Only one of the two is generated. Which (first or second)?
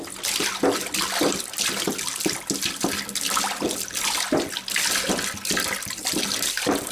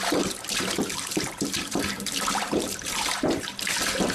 second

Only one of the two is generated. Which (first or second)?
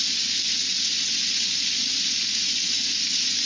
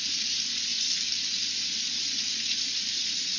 second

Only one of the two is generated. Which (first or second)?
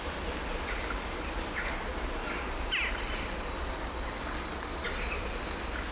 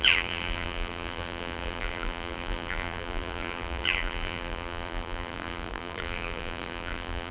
second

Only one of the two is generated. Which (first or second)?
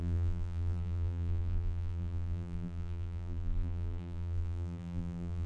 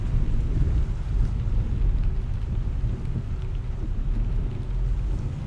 first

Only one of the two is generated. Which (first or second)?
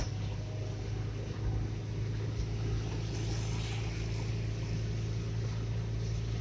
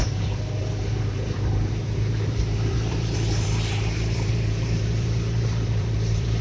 second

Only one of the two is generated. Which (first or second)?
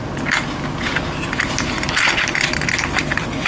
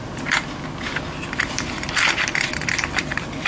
second